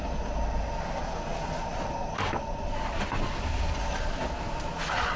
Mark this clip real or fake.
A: real